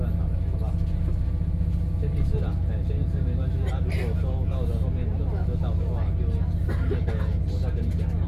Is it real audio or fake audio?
real